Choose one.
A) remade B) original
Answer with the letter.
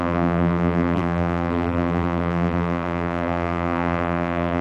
A